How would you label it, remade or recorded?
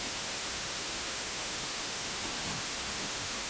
remade